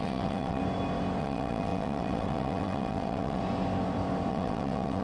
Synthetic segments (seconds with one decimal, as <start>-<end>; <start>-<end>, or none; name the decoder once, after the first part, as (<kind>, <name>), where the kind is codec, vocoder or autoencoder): 0.0-0.6 (vocoder, WaveNeXt); 1.2-3.4; 4.3-5.0